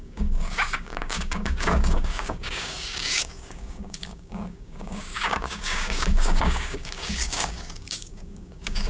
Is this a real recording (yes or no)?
no